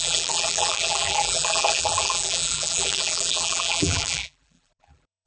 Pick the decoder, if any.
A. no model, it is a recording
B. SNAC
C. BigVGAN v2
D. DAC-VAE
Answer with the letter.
C